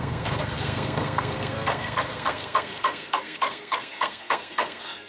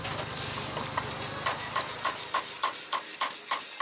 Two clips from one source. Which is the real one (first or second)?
second